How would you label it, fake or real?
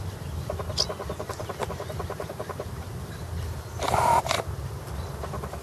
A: real